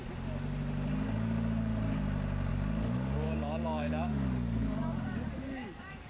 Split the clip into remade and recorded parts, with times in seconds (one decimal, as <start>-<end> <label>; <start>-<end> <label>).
0.0-0.9 recorded; 0.9-1.7 remade; 1.7-2.5 recorded; 2.5-6.1 remade